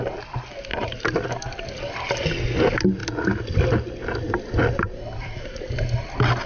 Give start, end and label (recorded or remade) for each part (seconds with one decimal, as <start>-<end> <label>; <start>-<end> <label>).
0.0-6.5 recorded